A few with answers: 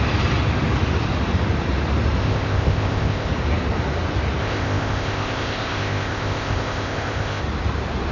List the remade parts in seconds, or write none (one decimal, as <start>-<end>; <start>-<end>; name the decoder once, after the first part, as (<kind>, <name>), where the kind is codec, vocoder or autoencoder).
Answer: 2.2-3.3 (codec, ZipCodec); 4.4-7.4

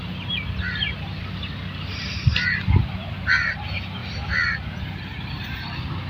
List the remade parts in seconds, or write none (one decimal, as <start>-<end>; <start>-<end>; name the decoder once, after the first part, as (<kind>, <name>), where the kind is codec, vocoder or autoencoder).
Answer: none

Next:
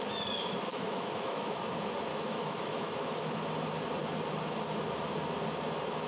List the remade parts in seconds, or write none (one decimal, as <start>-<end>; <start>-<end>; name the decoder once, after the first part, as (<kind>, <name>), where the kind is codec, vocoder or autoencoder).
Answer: 0.7-1.6 (autoencoder, DAC-VAE); 2.1-3.4

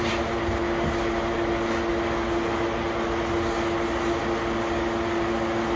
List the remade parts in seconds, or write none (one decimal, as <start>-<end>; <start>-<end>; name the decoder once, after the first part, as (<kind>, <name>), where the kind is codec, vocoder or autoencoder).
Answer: none

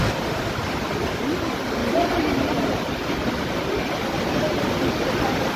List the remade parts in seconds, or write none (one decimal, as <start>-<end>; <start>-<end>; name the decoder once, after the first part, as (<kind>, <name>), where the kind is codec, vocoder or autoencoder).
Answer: none

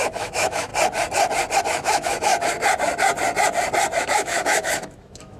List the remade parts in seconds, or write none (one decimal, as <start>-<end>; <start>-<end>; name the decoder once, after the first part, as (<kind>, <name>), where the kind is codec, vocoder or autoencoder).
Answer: 0.0-0.7 (autoencoder, DAC-VAE); 1.6-2.3; 4.0-5.4